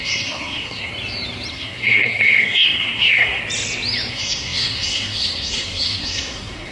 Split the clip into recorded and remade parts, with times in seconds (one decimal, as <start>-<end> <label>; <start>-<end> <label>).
0.0-0.9 remade; 0.9-1.5 recorded; 1.5-3.4 remade; 3.4-4.1 recorded; 4.1-6.7 remade